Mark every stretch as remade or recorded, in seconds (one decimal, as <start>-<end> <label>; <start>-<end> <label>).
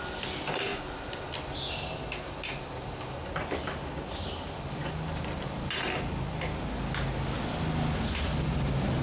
0.0-9.0 recorded